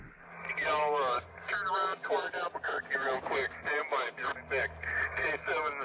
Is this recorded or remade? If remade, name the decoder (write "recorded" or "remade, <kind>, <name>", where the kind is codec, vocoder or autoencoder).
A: recorded